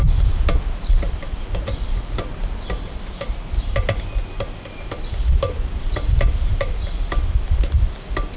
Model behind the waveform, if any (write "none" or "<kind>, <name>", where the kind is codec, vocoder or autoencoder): none